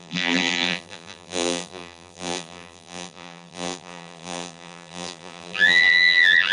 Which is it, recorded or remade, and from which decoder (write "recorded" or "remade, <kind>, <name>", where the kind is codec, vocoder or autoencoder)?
remade, vocoder, BigVGAN v2